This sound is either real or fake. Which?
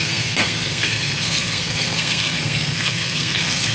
fake